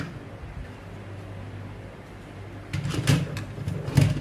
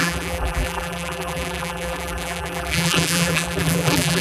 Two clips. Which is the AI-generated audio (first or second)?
second